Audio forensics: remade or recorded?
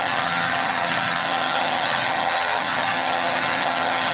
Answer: remade